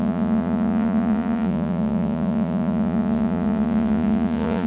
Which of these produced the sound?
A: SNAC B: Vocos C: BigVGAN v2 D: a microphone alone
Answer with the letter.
B